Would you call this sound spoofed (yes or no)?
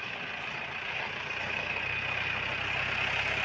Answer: no